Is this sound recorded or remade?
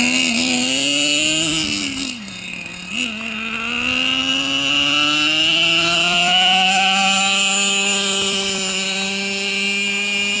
recorded